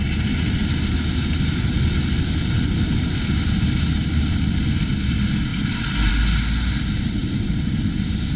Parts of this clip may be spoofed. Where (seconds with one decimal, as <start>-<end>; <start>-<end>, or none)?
7.2-7.8